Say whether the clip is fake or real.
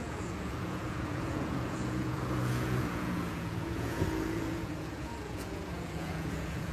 fake